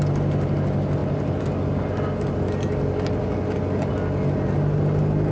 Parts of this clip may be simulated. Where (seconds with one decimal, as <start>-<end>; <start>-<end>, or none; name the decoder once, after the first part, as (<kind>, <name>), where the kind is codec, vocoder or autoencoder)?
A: none